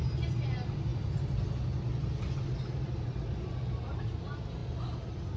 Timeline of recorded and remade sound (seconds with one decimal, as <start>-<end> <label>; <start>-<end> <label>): 0.0-5.4 recorded

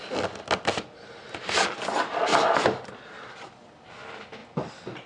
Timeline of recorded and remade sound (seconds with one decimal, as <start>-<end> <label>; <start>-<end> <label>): 0.0-2.3 recorded; 2.3-3.5 remade; 3.5-5.1 recorded